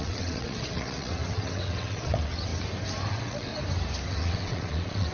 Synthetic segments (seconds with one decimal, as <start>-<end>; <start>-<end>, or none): 0.0-2.5; 3.1-3.5; 4.1-5.1